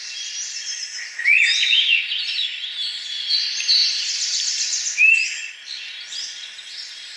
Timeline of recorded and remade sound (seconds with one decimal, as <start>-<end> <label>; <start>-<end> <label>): 0.0-7.2 recorded